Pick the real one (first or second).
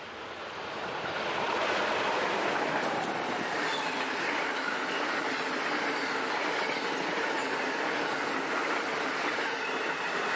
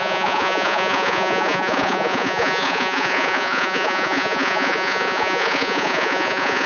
first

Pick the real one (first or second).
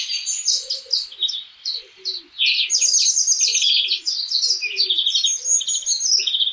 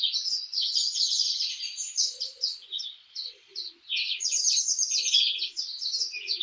first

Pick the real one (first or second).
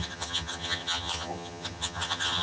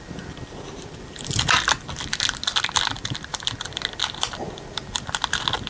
second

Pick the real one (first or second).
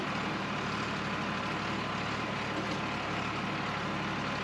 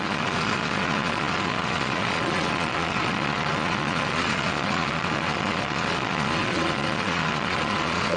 first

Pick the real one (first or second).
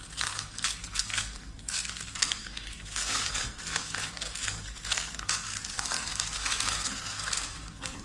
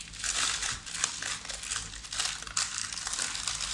second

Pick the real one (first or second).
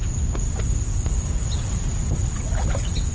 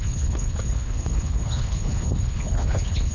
first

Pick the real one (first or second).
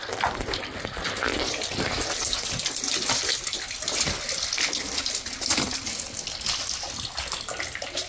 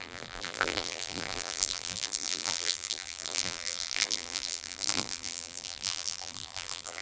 first